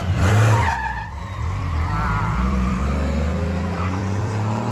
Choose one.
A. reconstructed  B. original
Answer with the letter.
A